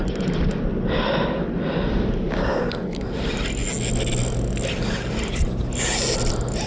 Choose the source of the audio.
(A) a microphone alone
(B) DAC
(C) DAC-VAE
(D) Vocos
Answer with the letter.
A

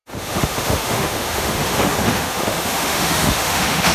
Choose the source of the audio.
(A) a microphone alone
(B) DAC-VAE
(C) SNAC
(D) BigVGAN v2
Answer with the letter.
B